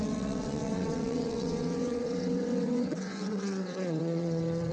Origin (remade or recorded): remade